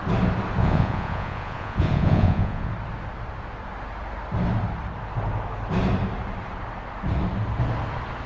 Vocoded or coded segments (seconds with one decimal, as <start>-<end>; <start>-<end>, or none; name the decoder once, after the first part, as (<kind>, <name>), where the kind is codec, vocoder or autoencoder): 0.6-2.7 (vocoder, Vocos)